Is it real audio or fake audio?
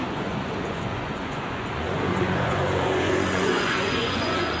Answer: fake